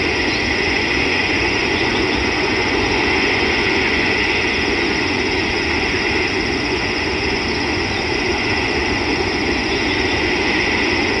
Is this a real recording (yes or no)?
no